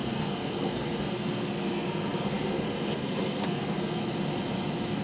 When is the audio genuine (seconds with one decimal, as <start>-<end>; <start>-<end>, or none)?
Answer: 4.0-5.0